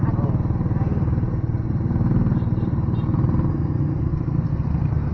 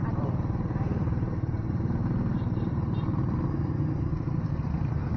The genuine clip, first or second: first